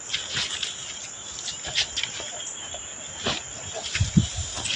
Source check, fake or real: real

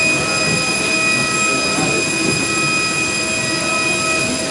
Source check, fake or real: real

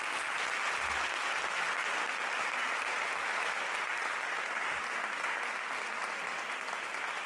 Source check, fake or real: real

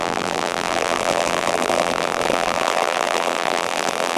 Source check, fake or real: fake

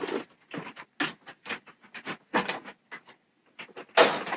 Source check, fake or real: real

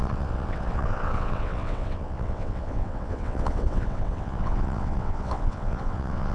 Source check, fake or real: fake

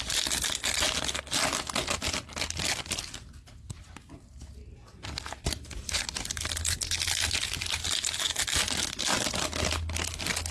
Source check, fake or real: real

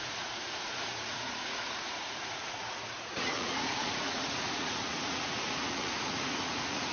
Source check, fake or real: fake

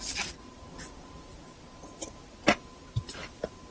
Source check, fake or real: real